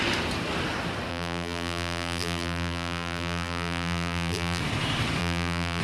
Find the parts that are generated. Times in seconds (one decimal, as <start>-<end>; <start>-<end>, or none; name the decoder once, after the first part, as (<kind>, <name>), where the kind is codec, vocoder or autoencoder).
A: 1.1-4.6 (vocoder, BigVGAN v2); 5.2-5.8